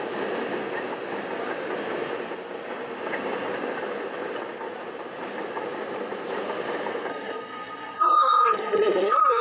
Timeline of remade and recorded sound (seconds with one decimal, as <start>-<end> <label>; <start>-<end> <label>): 0.0-7.1 recorded; 7.1-9.4 remade